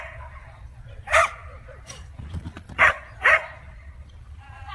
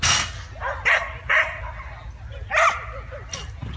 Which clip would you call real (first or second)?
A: second